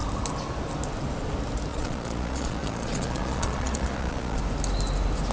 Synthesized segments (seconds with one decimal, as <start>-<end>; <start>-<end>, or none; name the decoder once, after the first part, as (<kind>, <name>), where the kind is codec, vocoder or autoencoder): 1.7-4.4 (vocoder, Vocos)